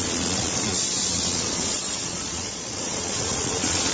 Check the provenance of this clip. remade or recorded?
remade